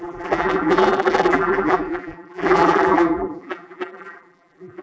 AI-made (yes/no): yes